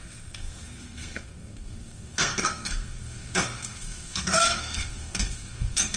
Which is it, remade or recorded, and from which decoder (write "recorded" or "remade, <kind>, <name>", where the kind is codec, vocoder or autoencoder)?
remade, codec, SNAC